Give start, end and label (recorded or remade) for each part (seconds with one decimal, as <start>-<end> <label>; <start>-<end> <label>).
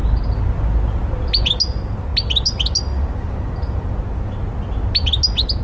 0.0-5.6 recorded